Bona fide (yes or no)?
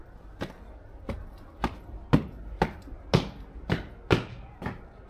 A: yes